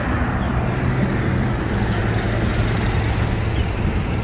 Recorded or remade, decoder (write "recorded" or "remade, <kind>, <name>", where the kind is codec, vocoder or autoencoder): recorded